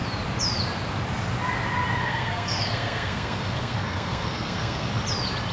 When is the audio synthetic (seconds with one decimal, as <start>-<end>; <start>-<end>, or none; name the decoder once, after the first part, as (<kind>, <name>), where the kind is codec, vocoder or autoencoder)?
2.0-4.9 (codec, SNAC)